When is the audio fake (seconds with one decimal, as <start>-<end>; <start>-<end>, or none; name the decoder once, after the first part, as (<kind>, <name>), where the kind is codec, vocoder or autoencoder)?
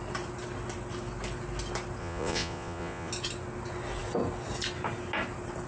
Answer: 2.0-3.1 (vocoder, Vocos)